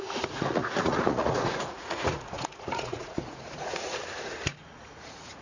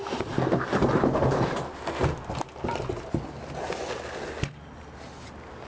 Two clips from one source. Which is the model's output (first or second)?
first